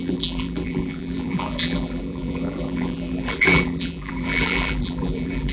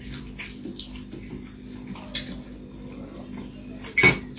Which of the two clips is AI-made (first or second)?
first